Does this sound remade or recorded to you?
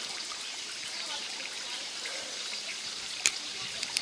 remade